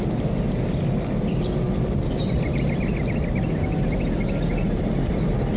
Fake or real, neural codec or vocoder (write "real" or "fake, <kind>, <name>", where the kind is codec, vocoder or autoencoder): real